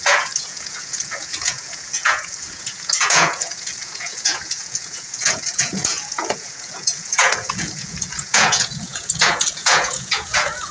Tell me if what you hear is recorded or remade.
remade